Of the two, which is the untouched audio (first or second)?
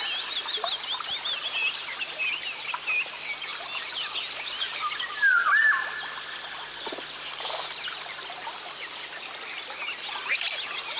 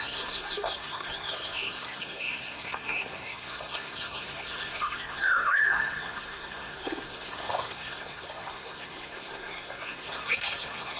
first